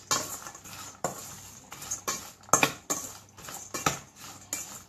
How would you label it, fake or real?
real